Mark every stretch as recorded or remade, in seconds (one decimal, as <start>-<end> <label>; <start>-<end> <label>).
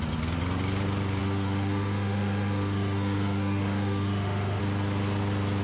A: 0.0-1.2 recorded; 1.2-4.6 remade; 4.6-5.6 recorded